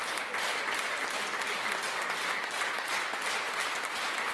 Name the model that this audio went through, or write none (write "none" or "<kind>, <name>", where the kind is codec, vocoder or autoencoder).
none